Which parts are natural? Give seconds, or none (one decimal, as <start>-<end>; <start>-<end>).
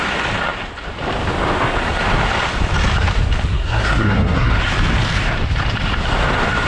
0.0-3.5; 4.5-6.7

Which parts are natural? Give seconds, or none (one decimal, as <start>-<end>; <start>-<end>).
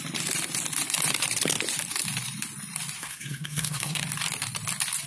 0.0-3.0; 4.0-5.1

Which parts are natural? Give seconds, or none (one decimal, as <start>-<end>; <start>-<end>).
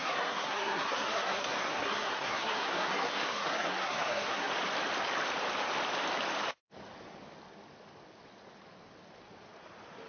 4.5-10.1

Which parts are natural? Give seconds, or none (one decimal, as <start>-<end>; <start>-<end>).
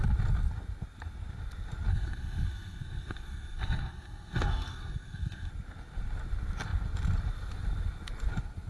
0.0-1.9; 5.5-8.7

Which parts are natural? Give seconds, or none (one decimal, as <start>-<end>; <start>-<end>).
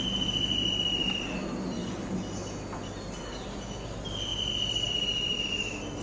0.0-6.0